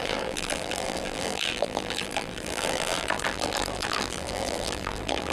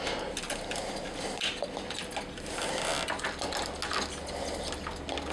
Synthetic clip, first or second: first